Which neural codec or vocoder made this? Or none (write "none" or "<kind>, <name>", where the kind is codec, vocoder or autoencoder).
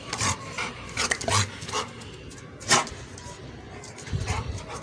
none